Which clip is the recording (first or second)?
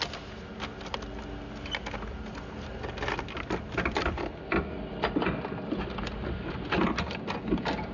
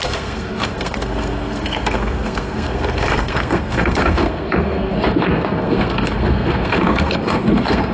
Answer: first